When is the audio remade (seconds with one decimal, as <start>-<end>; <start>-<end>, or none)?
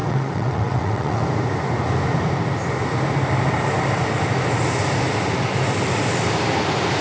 0.0-1.2